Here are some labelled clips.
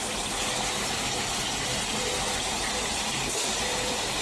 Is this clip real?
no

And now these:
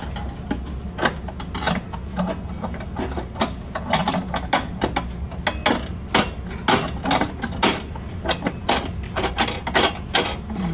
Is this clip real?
yes